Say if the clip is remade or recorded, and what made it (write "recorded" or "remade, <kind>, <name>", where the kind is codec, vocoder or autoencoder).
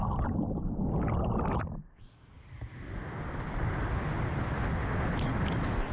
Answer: recorded